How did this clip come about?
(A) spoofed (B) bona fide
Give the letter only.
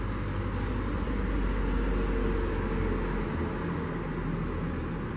B